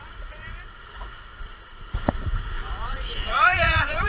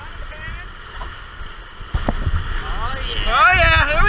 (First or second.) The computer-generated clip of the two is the first